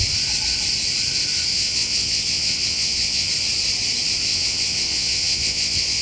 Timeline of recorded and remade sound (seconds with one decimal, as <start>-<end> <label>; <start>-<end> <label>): 0.0-1.5 recorded; 1.5-3.3 remade; 3.3-4.3 recorded; 4.3-6.0 remade